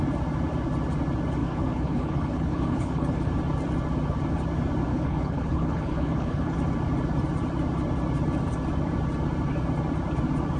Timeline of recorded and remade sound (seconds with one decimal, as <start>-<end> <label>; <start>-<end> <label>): 0.0-1.4 recorded; 1.4-3.3 remade; 3.3-4.9 recorded; 4.9-6.6 remade; 6.6-10.6 recorded